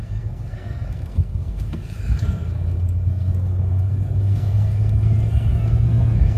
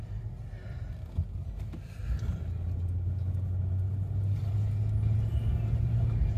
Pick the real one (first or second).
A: second